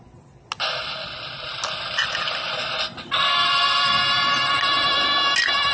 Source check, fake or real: real